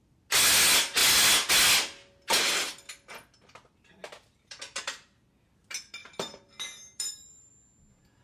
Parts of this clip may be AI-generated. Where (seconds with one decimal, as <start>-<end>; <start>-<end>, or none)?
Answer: 4.0-4.8; 6.0-7.5